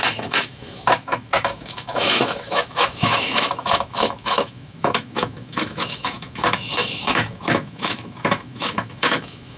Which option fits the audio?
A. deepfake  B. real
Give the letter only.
A